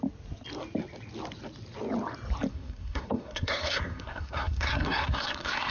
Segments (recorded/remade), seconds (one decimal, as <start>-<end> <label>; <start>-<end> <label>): 0.0-2.5 recorded; 2.5-5.7 remade